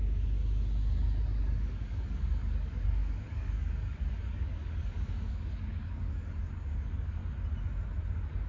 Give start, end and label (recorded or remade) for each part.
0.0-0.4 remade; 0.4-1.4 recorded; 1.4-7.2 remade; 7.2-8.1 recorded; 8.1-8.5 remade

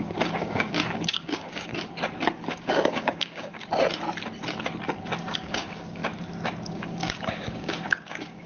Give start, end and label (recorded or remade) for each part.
0.0-1.7 remade; 1.7-2.5 recorded; 2.5-3.7 remade; 3.7-5.2 recorded; 5.2-6.0 remade; 6.0-6.7 recorded; 6.7-8.5 remade